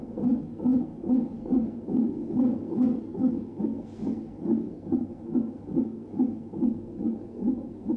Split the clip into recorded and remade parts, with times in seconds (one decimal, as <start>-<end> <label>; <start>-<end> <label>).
0.0-8.0 remade